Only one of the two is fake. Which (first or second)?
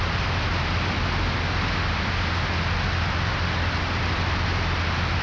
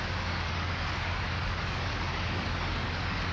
second